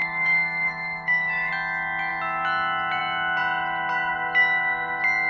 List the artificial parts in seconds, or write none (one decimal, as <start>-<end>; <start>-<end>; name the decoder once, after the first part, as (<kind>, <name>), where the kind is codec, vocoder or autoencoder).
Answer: 0.0-1.5 (autoencoder, DAC-VAE)